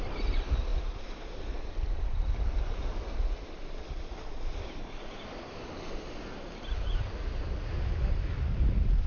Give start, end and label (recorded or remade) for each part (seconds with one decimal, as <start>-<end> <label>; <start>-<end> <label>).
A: 0.0-9.1 recorded